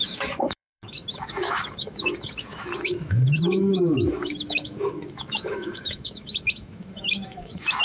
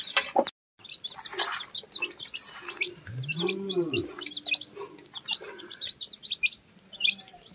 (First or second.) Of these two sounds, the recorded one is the second